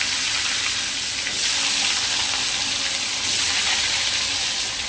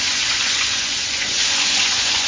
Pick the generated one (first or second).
second